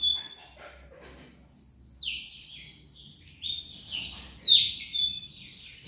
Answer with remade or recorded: recorded